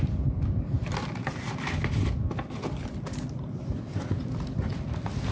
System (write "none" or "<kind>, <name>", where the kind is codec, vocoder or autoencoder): none